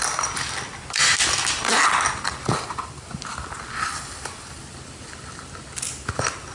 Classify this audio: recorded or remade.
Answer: recorded